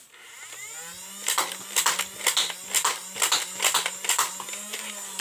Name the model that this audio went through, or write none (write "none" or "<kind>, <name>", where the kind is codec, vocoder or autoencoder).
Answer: none